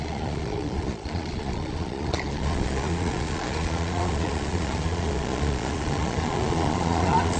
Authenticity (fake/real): fake